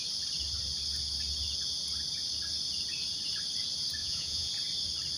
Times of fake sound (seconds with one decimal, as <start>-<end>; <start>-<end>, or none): 4.0-4.5